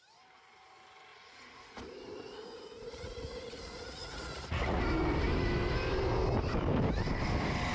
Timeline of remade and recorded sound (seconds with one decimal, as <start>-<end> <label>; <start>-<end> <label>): 0.0-1.1 recorded; 1.1-4.8 remade; 4.8-7.7 recorded